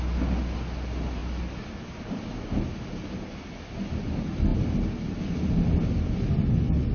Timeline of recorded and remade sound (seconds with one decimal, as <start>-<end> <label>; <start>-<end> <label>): 0.0-6.9 recorded

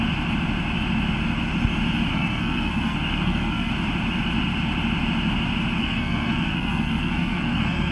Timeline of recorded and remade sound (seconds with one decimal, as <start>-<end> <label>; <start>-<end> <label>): 0.0-2.1 recorded; 2.1-3.7 remade; 3.7-5.8 recorded; 5.8-7.9 remade

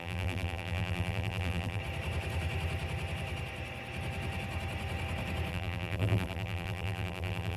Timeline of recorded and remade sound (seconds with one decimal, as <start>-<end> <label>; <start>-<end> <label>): 0.0-1.8 remade; 1.8-5.5 recorded; 5.5-7.6 remade